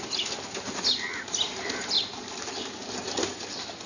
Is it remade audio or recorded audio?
recorded